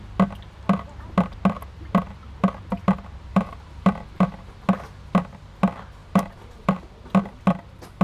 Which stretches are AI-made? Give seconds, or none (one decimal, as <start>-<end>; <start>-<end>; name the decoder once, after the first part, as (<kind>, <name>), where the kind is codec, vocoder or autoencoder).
3.3-4.6 (vocoder, BigVGAN v2); 6.0-6.7